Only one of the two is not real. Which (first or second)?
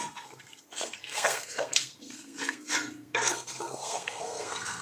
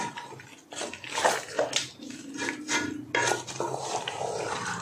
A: first